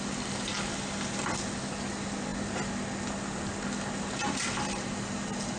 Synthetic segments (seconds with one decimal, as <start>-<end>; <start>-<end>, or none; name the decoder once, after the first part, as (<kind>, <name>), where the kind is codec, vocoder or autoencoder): none